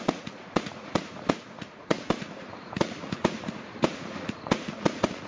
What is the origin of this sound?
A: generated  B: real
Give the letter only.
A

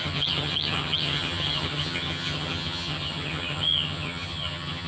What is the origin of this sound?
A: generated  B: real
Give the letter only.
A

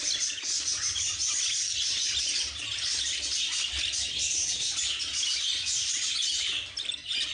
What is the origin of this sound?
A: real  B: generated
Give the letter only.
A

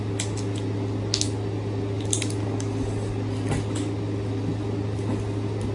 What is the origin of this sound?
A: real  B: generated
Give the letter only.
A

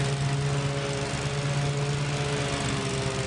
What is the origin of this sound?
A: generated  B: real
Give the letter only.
B